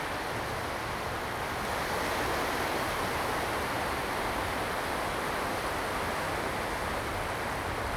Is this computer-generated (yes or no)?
no